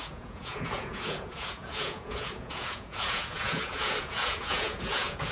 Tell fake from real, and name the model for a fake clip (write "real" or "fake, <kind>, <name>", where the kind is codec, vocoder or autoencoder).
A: fake, vocoder, Vocos